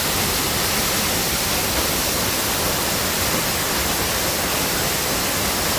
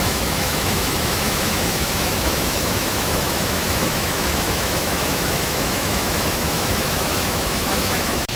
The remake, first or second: second